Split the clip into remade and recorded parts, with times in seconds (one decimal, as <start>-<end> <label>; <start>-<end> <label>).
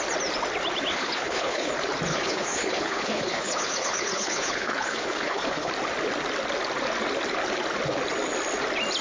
0.0-0.9 recorded; 0.9-1.7 remade; 1.7-2.1 recorded; 2.1-5.7 remade; 5.7-9.0 recorded